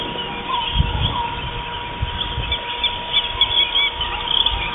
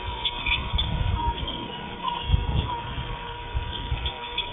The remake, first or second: second